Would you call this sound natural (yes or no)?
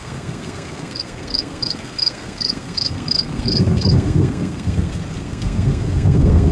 no